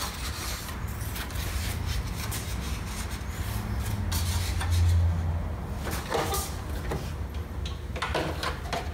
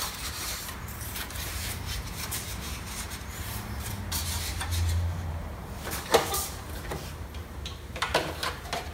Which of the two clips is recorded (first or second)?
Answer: first